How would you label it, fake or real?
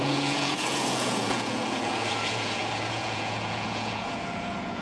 fake